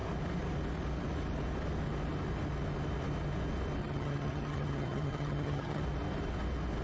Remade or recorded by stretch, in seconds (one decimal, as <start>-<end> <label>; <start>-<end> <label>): 0.0-3.8 recorded; 3.8-5.8 remade; 5.8-6.8 recorded